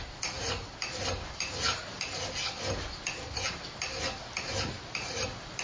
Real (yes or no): yes